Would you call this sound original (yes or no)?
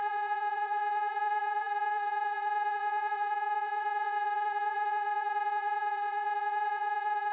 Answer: no